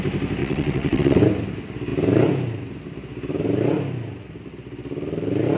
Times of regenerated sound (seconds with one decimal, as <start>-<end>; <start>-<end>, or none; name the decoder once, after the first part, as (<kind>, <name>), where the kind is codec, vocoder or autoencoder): 0.4-1.2 (vocoder, WaveNeXt)